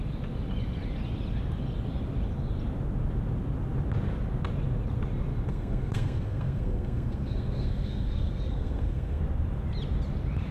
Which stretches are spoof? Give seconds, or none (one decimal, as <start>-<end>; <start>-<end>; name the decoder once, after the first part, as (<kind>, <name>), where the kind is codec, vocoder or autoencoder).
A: 5.5-9.2 (codec, SNAC)